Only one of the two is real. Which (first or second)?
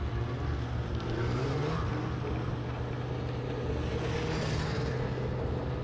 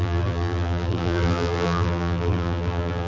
first